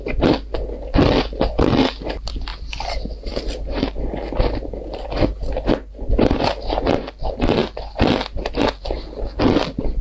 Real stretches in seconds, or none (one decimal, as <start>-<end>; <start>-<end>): 0.0-10.0